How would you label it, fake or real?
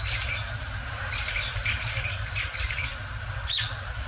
real